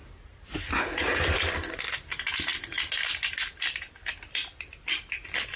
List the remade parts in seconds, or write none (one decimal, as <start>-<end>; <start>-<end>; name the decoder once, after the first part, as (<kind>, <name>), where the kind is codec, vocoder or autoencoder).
none